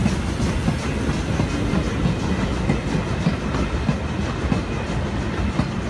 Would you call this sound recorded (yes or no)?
yes